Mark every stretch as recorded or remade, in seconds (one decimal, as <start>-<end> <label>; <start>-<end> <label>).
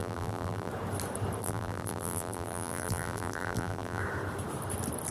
0.0-0.7 remade; 0.7-1.4 recorded; 1.4-4.0 remade; 4.0-5.1 recorded